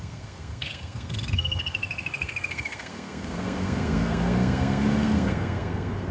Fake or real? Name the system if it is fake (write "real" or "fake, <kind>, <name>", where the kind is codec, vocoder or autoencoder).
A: fake, codec, SNAC